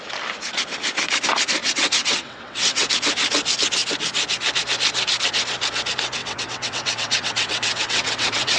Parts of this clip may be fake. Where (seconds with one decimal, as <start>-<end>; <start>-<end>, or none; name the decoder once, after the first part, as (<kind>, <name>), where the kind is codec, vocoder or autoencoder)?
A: 1.6-2.9 (vocoder, WaveNeXt); 6.2-8.6